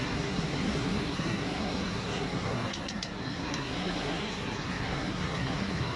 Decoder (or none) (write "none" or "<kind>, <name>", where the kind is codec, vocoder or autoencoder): codec, SNAC